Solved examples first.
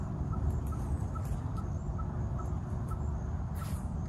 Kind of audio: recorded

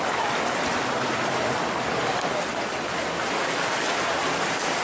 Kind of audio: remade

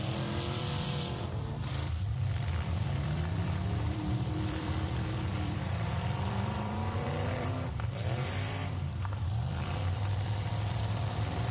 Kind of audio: remade